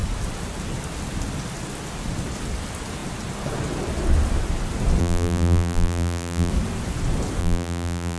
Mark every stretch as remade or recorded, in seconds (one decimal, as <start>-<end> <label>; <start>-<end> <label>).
0.0-5.0 recorded; 5.0-6.5 remade; 6.5-7.4 recorded; 7.4-8.2 remade